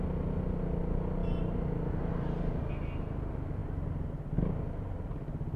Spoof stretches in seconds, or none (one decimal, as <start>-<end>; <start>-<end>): none